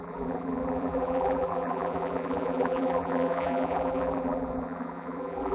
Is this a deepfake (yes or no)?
yes